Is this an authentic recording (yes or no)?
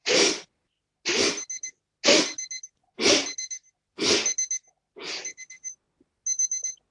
yes